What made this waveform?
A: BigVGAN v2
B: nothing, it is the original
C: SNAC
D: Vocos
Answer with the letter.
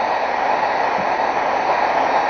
B